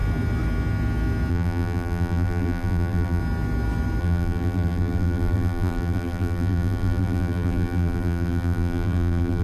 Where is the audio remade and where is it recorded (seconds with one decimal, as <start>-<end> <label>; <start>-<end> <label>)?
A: 0.0-1.3 recorded; 1.3-3.2 remade; 3.2-4.0 recorded; 4.0-9.4 remade